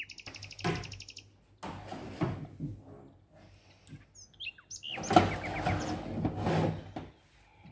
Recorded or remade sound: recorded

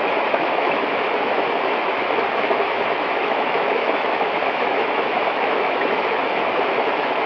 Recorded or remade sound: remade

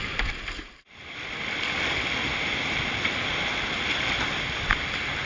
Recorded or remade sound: recorded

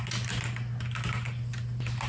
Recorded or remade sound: recorded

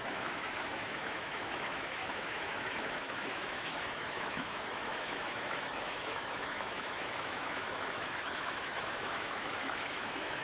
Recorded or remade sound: remade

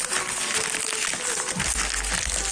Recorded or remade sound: recorded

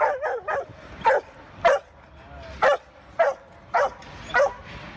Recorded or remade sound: recorded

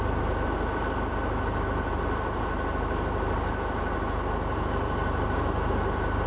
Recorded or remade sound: recorded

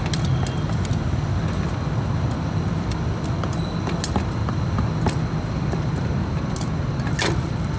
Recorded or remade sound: recorded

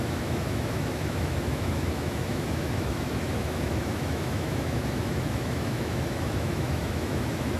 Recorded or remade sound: remade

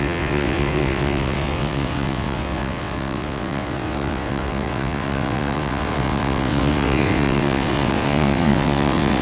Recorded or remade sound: remade